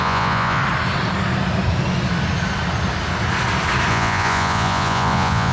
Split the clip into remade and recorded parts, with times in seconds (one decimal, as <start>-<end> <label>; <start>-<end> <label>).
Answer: 0.0-0.6 remade; 0.6-3.9 recorded; 3.9-5.5 remade